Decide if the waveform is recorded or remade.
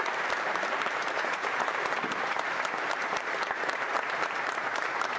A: remade